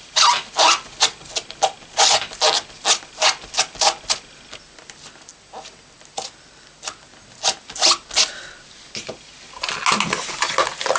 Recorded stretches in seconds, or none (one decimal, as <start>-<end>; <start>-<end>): 0.0-11.0